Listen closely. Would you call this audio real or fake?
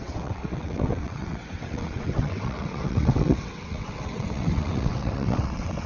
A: fake